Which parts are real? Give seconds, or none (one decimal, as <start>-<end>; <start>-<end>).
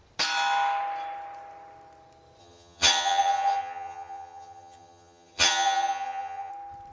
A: 0.0-2.4; 6.5-6.9